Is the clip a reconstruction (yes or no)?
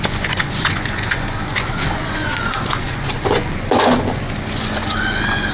yes